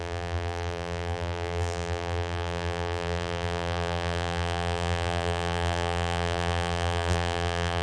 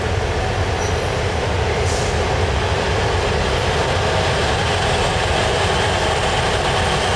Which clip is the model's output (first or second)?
first